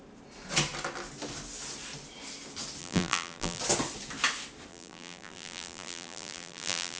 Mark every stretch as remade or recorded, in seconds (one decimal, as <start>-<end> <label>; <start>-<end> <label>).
0.0-2.8 recorded; 2.8-3.6 remade; 3.6-4.7 recorded; 4.7-7.0 remade